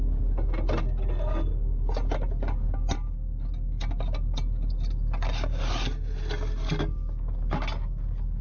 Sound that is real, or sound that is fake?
real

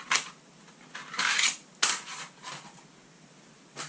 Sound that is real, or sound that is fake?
real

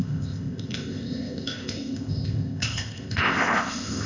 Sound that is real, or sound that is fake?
fake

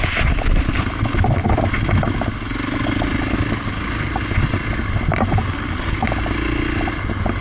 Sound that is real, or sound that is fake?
real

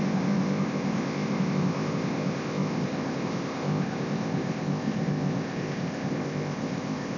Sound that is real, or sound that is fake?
fake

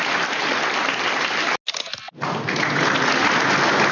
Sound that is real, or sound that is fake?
real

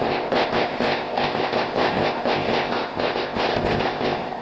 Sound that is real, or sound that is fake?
fake